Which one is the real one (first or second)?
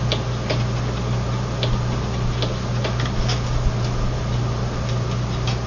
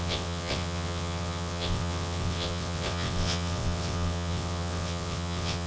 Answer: first